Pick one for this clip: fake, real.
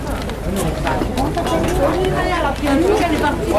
real